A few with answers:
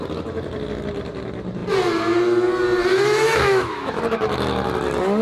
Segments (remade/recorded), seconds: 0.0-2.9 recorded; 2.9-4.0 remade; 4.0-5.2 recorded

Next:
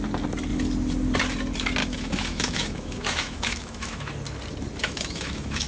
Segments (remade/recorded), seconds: 0.0-1.8 recorded; 1.8-4.1 remade; 4.1-4.8 recorded; 4.8-5.7 remade

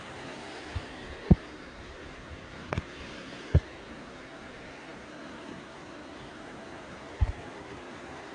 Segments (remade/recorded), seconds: 0.0-8.3 remade